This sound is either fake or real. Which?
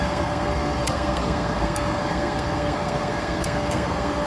fake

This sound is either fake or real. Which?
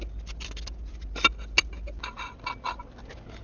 real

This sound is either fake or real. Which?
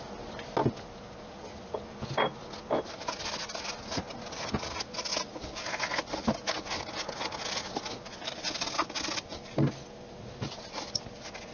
real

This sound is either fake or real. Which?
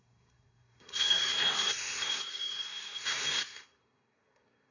fake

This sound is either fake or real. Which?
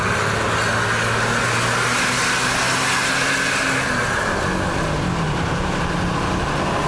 real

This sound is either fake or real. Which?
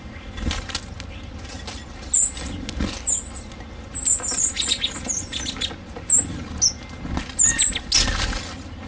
real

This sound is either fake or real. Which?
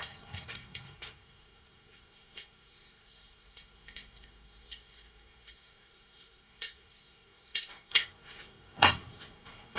fake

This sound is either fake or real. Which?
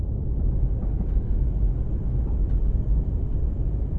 real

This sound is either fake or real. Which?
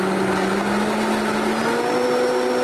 real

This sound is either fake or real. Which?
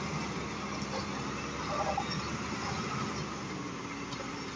real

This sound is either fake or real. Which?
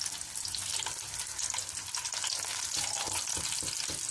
real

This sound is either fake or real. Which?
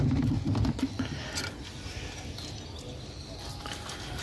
real